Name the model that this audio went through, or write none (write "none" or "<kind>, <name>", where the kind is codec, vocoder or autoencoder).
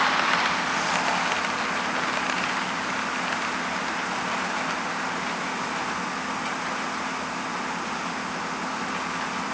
none